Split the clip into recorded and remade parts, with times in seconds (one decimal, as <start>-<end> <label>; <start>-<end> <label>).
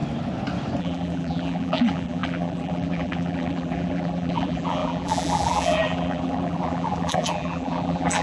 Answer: 0.0-0.8 recorded; 0.8-8.2 remade